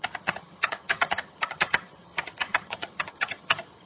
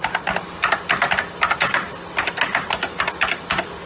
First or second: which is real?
second